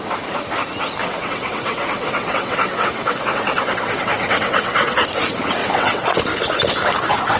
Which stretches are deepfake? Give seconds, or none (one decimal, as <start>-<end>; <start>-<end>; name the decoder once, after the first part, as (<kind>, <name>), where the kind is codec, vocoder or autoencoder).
1.0-4.9 (vocoder, WaveNeXt); 5.6-6.2